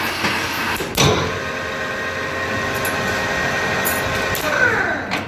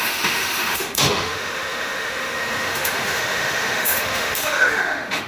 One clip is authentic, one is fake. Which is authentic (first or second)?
first